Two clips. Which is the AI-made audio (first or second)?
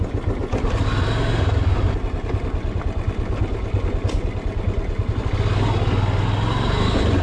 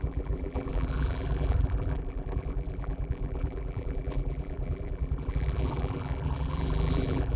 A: second